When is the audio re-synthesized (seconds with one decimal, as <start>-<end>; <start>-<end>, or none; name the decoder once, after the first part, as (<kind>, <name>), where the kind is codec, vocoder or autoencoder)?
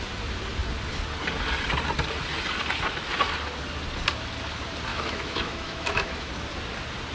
4.9-6.3 (autoencoder, DAC-VAE)